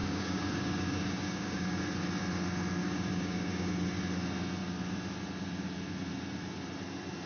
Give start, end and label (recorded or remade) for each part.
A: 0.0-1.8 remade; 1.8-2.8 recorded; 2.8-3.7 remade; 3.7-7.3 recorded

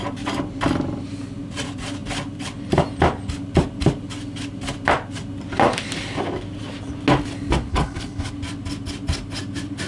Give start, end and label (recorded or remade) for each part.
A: 0.0-7.7 recorded; 7.7-8.3 remade; 8.3-9.9 recorded

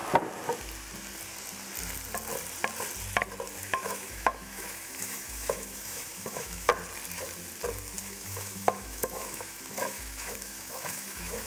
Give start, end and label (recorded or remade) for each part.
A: 0.0-3.6 recorded; 3.6-6.7 remade; 6.7-8.0 recorded; 8.0-11.5 remade

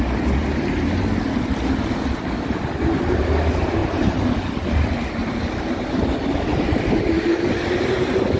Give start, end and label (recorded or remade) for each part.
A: 0.0-3.8 recorded; 3.8-4.5 remade; 4.5-5.2 recorded; 5.2-5.9 remade; 5.9-8.4 recorded

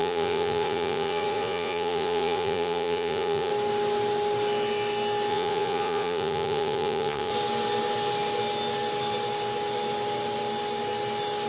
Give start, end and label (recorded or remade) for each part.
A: 0.0-3.5 remade; 3.5-5.3 recorded; 5.3-7.3 remade; 7.3-11.5 recorded

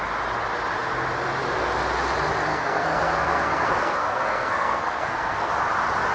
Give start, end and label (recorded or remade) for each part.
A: 0.0-2.5 recorded; 2.5-5.5 remade; 5.5-6.1 recorded

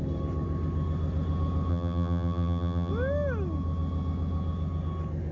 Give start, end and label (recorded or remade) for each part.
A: 0.0-1.7 recorded; 1.7-2.9 remade; 2.9-5.3 recorded

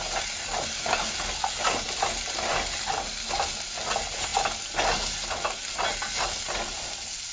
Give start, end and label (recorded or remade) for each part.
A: 0.0-7.3 recorded